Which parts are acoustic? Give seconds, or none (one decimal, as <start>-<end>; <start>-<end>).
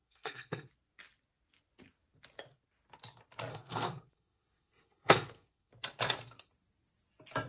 0.7-3.5; 5.7-7.5